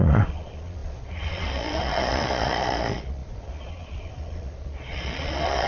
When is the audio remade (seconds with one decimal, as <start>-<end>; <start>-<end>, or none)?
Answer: 0.0-5.7